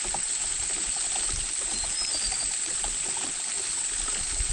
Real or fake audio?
real